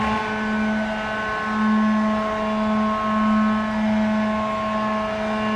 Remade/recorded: recorded